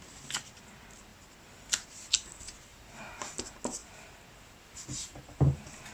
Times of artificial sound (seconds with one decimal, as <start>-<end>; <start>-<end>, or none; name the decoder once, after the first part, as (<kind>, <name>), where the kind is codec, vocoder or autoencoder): 2.7-3.4 (vocoder, BigVGAN v2)